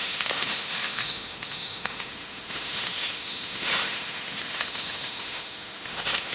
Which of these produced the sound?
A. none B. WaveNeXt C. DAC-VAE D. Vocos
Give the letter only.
C